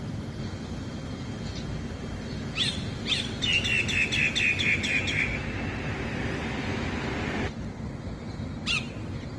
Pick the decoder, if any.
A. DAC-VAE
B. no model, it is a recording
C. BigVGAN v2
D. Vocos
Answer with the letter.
B